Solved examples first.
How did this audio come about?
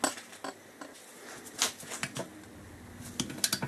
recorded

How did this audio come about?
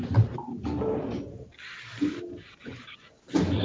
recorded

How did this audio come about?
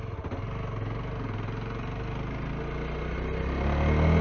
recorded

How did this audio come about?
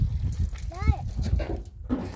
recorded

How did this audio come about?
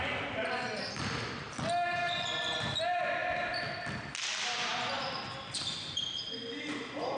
recorded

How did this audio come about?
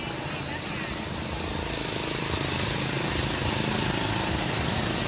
recorded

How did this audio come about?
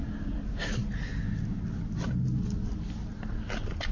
recorded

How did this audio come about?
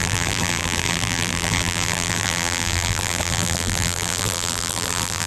remade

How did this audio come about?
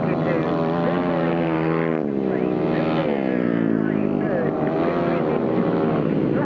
recorded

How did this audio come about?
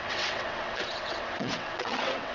remade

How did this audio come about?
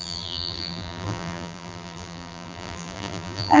remade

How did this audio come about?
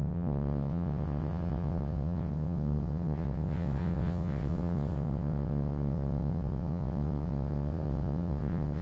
remade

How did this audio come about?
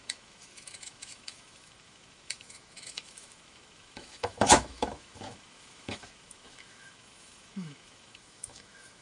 remade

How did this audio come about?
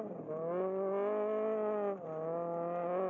recorded